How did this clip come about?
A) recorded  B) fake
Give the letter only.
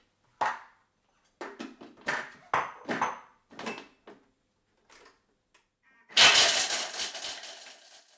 A